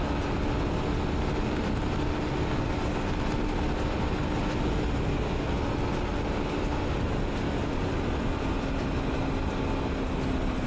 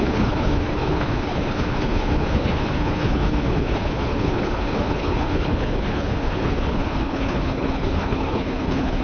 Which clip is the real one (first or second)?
first